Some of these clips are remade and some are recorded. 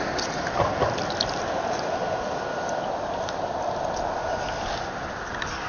recorded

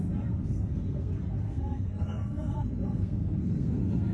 remade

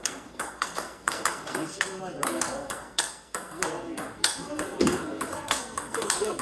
remade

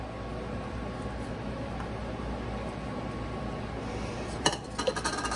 recorded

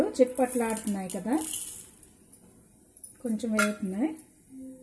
recorded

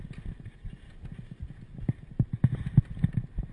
recorded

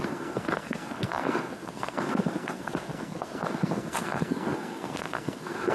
remade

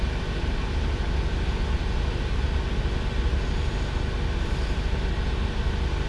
recorded